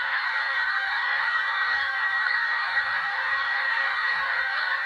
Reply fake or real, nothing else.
fake